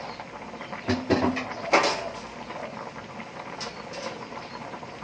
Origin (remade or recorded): recorded